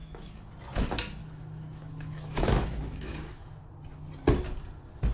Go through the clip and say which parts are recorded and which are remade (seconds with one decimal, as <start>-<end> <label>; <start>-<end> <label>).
0.0-0.5 remade; 0.5-1.2 recorded; 1.2-3.6 remade; 3.6-5.1 recorded